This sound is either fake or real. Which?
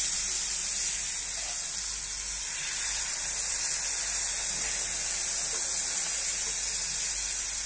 real